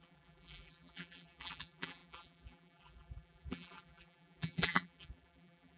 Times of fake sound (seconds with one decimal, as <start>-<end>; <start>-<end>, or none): 0.0-5.8